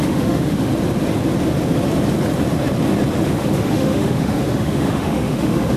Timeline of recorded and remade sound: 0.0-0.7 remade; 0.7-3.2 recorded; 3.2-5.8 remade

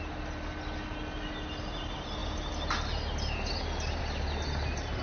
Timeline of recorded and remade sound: 0.0-5.0 recorded

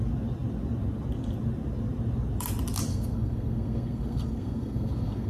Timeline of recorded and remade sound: 0.0-2.9 recorded; 2.9-5.3 remade

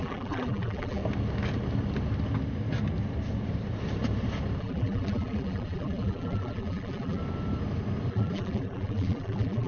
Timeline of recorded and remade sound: 0.0-1.0 remade; 1.0-4.6 recorded; 4.6-7.2 remade; 7.2-8.1 recorded; 8.1-9.7 remade